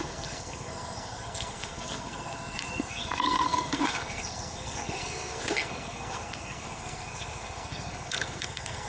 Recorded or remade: remade